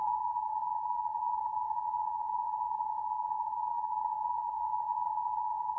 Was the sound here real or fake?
fake